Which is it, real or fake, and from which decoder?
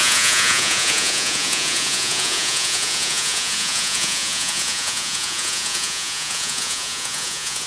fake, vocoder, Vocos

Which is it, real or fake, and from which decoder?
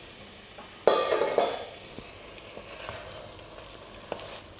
real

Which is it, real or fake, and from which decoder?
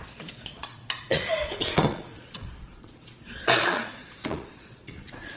fake, vocoder, Vocos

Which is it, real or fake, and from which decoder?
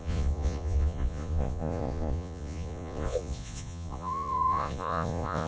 fake, vocoder, Vocos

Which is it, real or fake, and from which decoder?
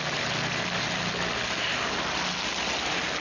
real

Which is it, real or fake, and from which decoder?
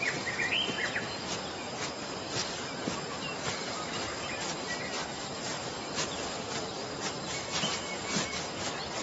real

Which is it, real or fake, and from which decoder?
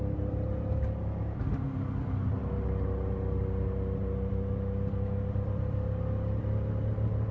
real